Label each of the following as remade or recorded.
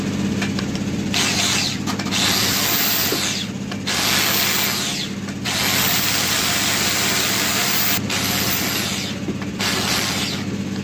recorded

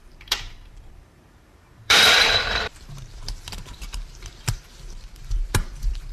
remade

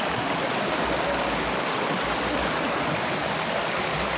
recorded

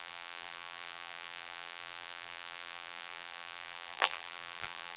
remade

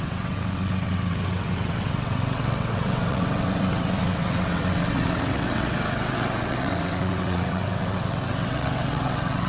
remade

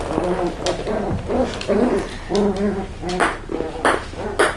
recorded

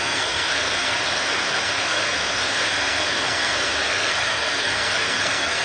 remade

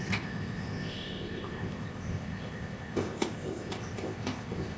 remade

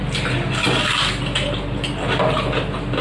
recorded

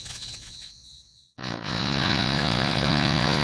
remade